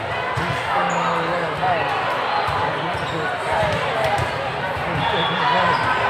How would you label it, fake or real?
real